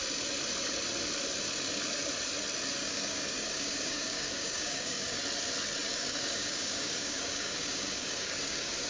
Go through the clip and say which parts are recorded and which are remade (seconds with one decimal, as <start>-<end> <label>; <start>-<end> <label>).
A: 0.0-2.8 recorded; 2.8-5.2 remade; 5.2-5.8 recorded; 5.8-8.9 remade